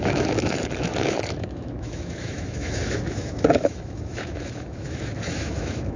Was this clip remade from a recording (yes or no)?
yes